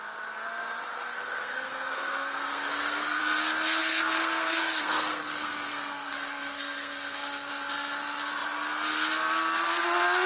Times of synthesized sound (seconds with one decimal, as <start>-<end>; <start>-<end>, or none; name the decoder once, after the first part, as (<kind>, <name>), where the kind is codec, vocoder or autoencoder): 0.9-3.2 (codec, SNAC); 3.8-7.5